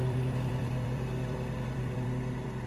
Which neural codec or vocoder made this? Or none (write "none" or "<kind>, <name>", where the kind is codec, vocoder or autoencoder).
vocoder, BigVGAN v2